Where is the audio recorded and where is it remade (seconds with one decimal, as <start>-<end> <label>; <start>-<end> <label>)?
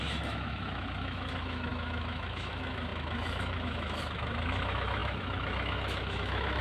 0.0-6.6 remade